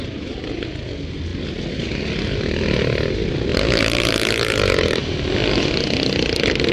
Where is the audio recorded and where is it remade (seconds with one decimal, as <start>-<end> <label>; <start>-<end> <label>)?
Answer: 0.0-3.5 recorded; 3.5-5.0 remade; 5.0-6.7 recorded